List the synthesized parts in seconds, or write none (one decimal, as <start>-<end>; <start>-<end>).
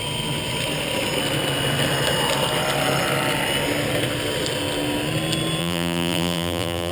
5.6-6.9